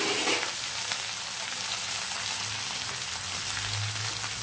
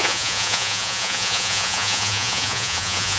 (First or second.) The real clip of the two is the first